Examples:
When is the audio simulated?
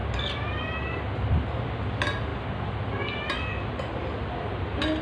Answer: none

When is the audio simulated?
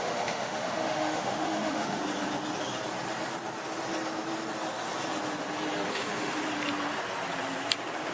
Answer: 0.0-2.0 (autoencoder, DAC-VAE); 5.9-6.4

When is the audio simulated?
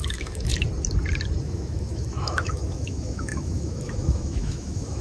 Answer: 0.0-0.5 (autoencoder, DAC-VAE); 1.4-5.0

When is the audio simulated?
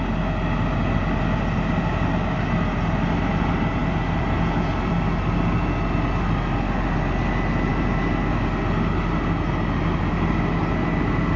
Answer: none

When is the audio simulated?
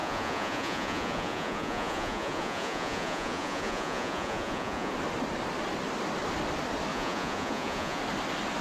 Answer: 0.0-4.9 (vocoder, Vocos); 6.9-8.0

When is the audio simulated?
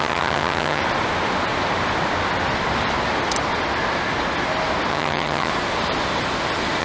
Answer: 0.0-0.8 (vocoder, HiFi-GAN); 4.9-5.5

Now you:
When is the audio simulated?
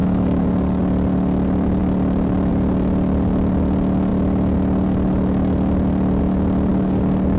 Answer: 0.0-0.8 (codec, DAC); 6.7-7.4